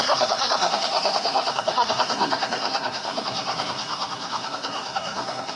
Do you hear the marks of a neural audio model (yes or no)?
yes